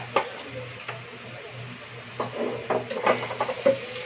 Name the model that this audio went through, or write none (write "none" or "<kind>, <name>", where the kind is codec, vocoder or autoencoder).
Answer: none